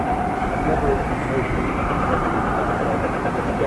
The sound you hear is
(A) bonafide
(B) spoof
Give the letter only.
A